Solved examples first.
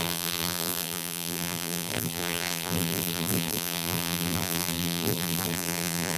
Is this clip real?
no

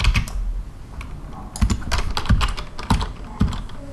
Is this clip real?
yes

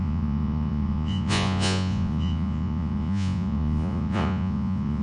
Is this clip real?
no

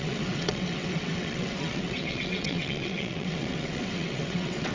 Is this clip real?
no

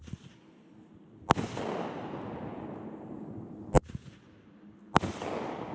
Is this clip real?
yes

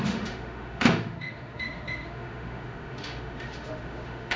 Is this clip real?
no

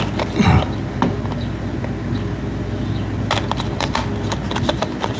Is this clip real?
yes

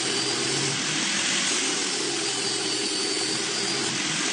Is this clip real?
yes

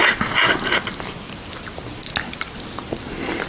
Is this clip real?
yes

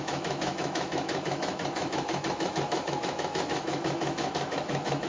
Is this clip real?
no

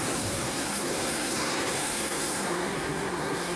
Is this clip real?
no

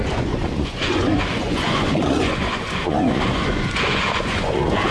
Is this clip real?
no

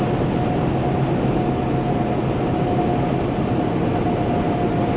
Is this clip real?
yes